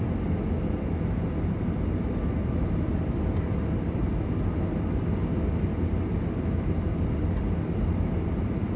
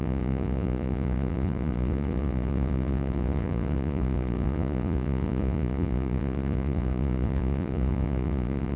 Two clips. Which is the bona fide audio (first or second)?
first